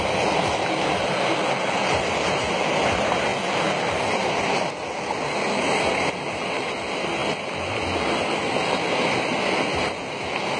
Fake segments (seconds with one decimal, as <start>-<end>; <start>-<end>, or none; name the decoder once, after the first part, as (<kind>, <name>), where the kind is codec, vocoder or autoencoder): none